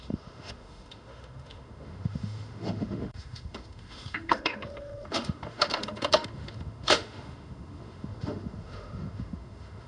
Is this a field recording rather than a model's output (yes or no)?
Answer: no